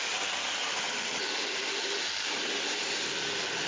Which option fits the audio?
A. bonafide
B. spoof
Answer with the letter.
A